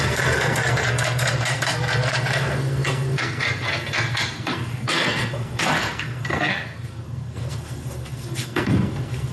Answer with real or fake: fake